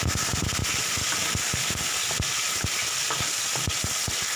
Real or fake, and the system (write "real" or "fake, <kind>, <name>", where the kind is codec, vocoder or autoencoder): real